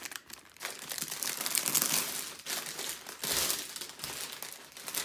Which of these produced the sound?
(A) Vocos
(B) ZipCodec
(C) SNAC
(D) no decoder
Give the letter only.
D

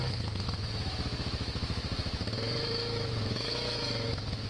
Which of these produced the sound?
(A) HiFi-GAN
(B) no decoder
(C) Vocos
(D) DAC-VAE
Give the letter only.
D